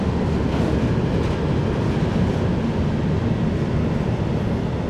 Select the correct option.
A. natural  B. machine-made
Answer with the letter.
A